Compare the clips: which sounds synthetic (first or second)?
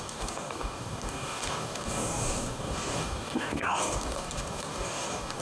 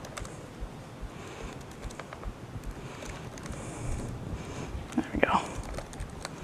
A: first